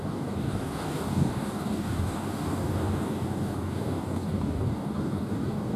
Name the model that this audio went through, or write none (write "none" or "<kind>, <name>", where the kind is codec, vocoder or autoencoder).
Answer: codec, DAC